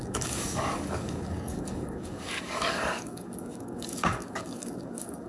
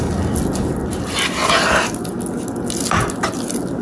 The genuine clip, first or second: second